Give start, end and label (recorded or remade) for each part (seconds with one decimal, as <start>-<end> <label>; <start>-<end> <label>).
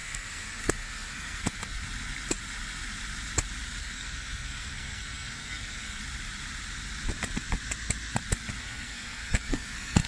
0.0-1.8 remade; 1.8-3.8 recorded; 3.8-6.0 remade; 6.0-8.6 recorded; 8.6-10.1 remade